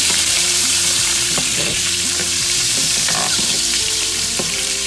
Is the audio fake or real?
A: fake